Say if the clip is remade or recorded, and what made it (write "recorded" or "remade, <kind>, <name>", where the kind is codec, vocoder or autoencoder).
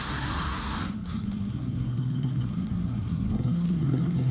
remade, codec, SNAC